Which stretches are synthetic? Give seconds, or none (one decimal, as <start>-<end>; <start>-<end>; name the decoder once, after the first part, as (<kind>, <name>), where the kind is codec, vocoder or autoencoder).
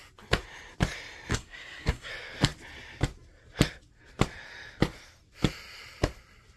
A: 1.3-2.1 (codec, SNAC)